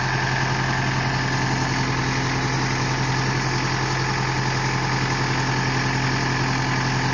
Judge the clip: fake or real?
real